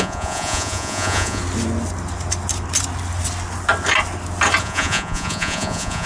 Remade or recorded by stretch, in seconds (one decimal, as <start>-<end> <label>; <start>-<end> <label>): 0.0-1.4 remade; 1.4-4.6 recorded; 4.6-6.1 remade